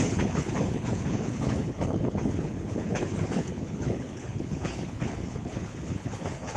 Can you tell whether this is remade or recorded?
remade